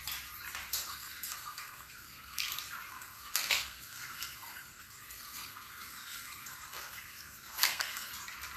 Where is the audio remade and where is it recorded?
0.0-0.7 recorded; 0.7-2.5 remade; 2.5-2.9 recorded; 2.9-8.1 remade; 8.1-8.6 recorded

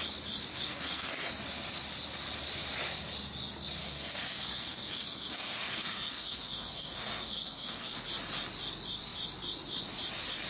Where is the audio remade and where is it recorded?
0.0-0.5 recorded; 0.5-1.3 remade; 1.3-3.8 recorded; 3.8-8.0 remade; 8.0-10.5 recorded

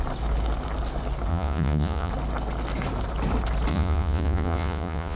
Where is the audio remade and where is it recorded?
0.0-1.3 recorded; 1.3-2.1 remade; 2.1-3.7 recorded; 3.7-5.2 remade

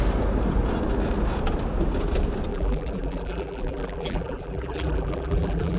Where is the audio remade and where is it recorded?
0.0-2.5 recorded; 2.5-5.8 remade

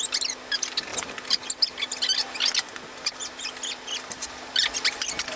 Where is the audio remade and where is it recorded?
0.0-5.4 recorded

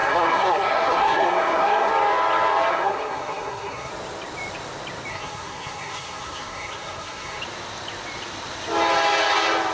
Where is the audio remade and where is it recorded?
0.0-1.9 remade; 1.9-2.7 recorded; 2.7-3.9 remade; 3.9-5.1 recorded; 5.1-7.4 remade; 7.4-9.7 recorded